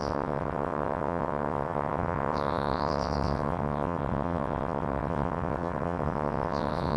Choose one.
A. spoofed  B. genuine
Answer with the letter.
A